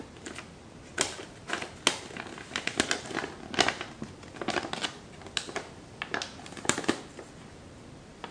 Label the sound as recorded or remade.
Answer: recorded